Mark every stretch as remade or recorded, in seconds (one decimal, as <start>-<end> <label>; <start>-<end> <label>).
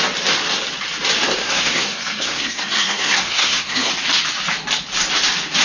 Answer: 0.0-1.4 recorded; 1.4-3.9 remade; 3.9-5.6 recorded